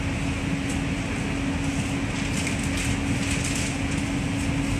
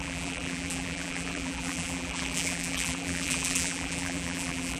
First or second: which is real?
first